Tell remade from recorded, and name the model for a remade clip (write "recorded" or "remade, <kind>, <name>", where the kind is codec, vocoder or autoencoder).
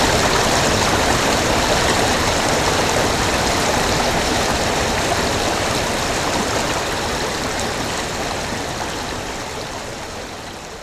recorded